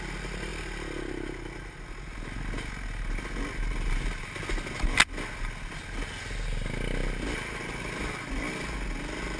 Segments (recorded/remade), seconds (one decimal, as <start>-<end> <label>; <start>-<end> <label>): 0.0-9.4 recorded